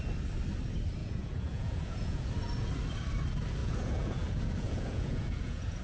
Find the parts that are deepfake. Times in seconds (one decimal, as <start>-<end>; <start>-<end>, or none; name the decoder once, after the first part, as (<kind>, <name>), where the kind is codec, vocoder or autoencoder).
1.0-2.3 (vocoder, Vocos); 3.6-5.8